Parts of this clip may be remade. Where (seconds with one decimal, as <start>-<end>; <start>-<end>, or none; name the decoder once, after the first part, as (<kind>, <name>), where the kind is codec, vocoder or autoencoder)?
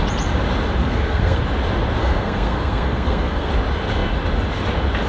0.8-1.4 (codec, SNAC); 2.0-3.5